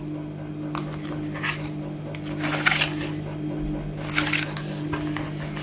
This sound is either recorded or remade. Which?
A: recorded